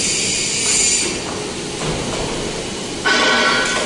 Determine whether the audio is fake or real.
real